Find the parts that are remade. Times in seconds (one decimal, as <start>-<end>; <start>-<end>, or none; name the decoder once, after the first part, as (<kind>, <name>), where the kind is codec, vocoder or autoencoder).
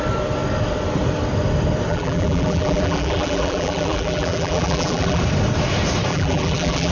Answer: 1.9-5.2 (vocoder, BigVGAN v2); 6.1-6.9